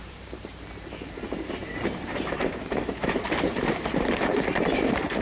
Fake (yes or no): yes